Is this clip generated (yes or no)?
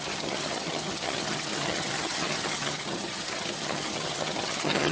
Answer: yes